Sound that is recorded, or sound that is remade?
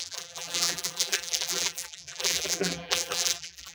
remade